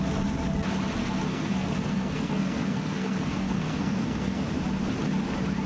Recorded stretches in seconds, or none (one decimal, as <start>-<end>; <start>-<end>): 0.0-1.0; 4.4-5.7